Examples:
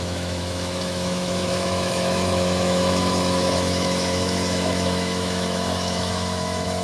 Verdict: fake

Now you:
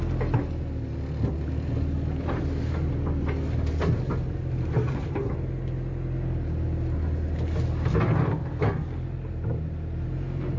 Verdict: real